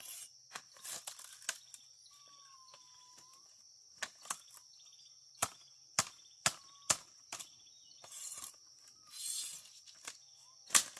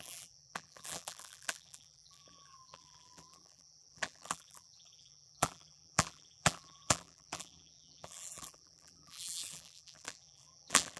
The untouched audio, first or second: first